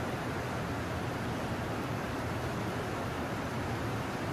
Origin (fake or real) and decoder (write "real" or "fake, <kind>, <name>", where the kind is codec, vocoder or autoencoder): fake, vocoder, BigVGAN v2